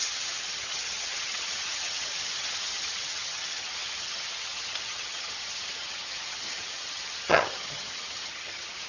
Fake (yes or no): yes